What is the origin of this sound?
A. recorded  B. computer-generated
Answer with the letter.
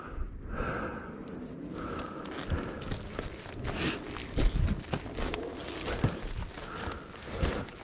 A